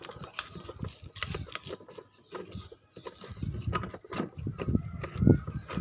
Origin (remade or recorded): recorded